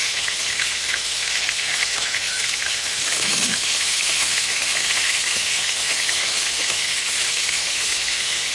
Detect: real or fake fake